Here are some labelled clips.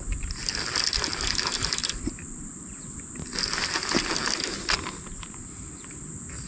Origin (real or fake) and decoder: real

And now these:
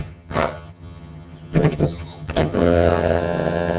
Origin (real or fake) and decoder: fake, vocoder, HiFi-GAN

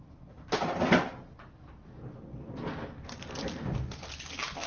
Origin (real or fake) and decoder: real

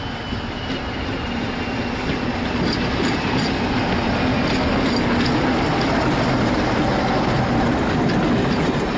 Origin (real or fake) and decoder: real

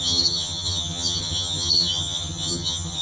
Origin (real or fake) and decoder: fake, vocoder, HiFi-GAN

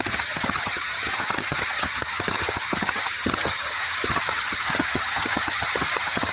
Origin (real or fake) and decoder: fake, vocoder, HiFi-GAN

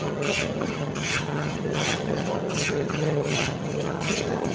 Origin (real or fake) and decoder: fake, vocoder, HiFi-GAN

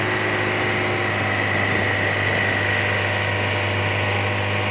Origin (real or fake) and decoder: real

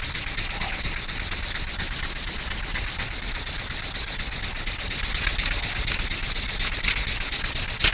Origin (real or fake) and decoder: real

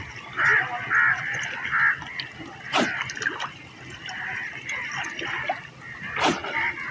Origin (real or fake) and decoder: real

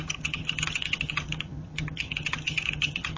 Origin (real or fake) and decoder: fake, vocoder, HiFi-GAN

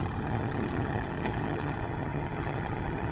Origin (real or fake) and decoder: fake, vocoder, HiFi-GAN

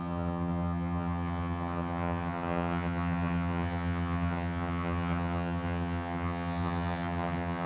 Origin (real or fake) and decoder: fake, vocoder, HiFi-GAN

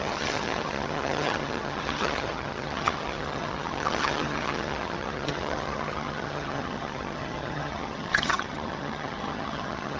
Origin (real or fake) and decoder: fake, vocoder, HiFi-GAN